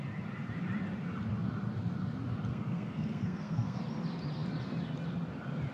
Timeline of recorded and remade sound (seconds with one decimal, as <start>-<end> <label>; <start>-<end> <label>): 0.0-2.5 recorded; 2.5-3.8 remade; 3.8-5.7 recorded